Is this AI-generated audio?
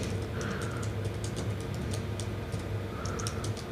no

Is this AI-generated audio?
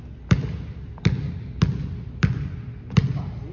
no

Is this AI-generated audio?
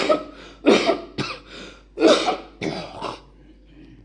no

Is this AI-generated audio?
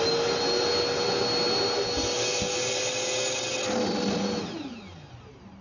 no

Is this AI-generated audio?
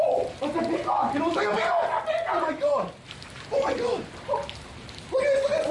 no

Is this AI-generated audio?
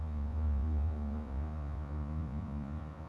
yes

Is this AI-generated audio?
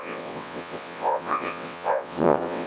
yes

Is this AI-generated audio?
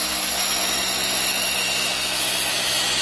yes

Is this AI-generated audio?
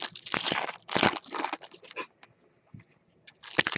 no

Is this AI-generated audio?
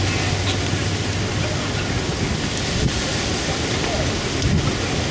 no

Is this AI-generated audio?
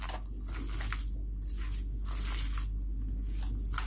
no